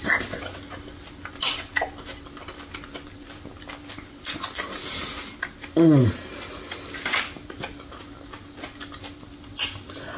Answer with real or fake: real